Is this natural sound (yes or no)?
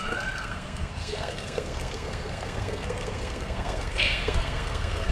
no